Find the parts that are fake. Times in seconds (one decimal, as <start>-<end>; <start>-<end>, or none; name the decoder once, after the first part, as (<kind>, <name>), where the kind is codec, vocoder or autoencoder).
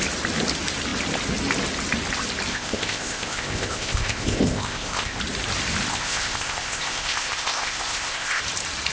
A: 2.5-5.2 (codec, ZipCodec); 5.9-8.4